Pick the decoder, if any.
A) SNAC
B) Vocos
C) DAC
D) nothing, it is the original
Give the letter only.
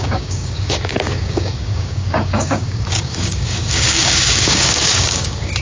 C